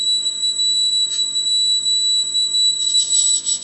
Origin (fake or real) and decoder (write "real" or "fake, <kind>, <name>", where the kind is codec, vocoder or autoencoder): fake, vocoder, Vocos